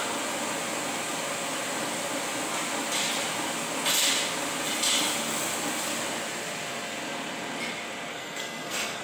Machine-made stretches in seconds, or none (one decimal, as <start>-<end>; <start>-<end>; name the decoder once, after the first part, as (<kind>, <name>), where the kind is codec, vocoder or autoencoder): 8.1-9.0 (codec, SNAC)